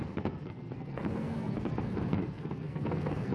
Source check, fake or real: fake